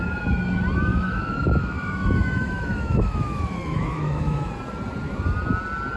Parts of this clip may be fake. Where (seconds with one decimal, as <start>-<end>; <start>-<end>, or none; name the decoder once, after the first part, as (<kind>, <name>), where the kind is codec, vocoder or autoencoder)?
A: 0.9-4.5 (autoencoder, DAC-VAE)